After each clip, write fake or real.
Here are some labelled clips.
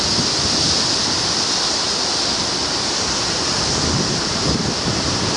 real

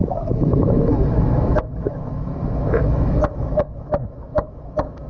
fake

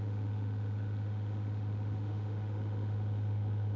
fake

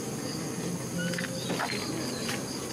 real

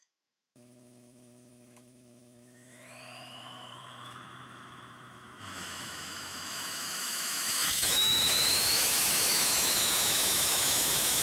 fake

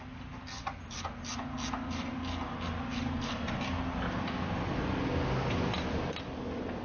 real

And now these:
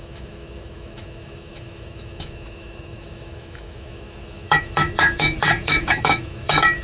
fake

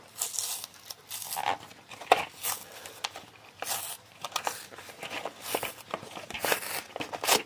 real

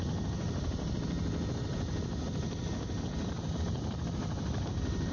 real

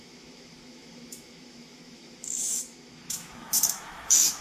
fake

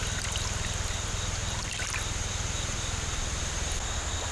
real